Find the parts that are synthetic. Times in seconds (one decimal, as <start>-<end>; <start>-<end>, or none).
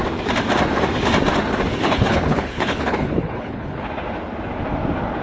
1.7-3.9